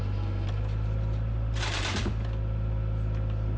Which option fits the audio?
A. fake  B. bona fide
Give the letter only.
B